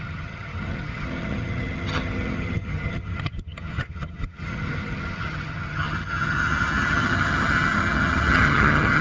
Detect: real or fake fake